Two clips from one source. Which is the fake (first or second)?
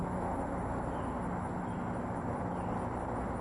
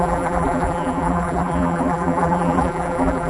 second